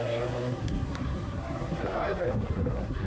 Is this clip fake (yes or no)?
yes